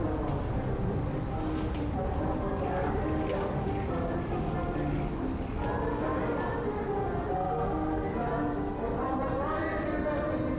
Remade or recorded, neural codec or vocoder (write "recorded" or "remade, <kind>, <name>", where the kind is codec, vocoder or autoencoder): recorded